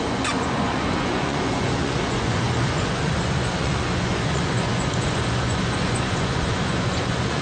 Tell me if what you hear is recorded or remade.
remade